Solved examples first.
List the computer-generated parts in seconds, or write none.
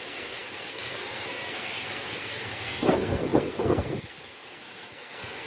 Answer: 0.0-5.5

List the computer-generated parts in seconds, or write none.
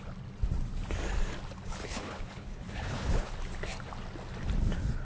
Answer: 1.8-3.4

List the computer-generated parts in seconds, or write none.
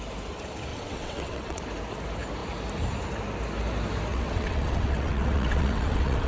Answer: 0.7-1.6; 4.1-6.3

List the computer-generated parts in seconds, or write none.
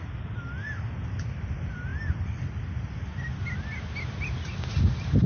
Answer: none